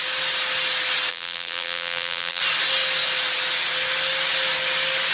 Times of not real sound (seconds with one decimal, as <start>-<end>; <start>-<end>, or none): 1.1-2.4